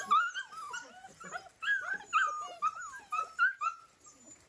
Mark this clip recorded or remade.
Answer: recorded